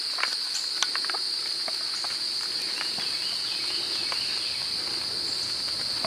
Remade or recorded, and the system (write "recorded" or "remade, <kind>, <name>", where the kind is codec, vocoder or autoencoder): recorded